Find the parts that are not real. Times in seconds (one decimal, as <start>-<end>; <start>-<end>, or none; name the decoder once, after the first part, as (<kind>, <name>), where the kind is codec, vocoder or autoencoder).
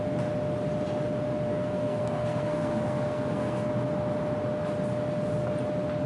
1.5-3.7 (codec, SNAC)